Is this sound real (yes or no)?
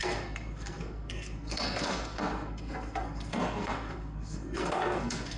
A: no